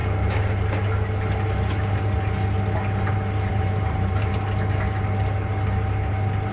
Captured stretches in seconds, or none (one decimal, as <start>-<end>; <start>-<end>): 0.0-3.5; 4.3-6.5